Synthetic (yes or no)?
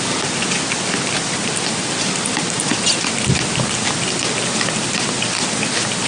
no